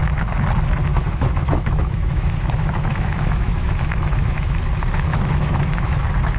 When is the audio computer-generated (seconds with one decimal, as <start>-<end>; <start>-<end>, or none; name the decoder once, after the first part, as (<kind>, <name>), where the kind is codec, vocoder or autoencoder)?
0.9-4.5 (autoencoder, DAC-VAE); 5.1-6.0